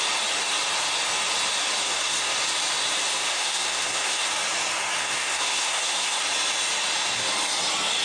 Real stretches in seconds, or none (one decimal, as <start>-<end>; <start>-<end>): 0.0-1.8; 2.3-3.3; 4.3-5.0; 6.2-8.0